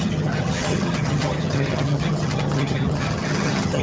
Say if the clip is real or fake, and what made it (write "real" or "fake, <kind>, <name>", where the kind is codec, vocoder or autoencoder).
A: fake, vocoder, HiFi-GAN